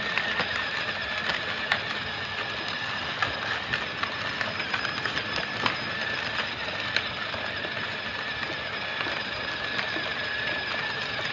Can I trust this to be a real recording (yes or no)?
yes